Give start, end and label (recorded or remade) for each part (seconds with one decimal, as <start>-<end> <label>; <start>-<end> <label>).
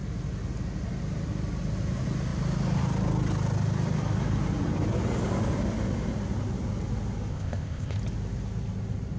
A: 0.0-7.3 recorded; 7.3-8.0 remade; 8.0-9.2 recorded